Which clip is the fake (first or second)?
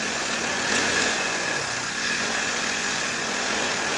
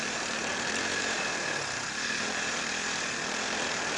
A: first